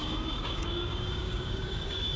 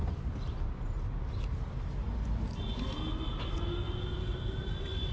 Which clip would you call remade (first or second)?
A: first